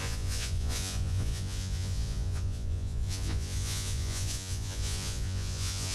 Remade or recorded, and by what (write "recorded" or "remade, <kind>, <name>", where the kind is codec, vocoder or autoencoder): remade, vocoder, Vocos